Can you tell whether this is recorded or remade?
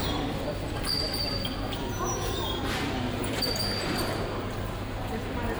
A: remade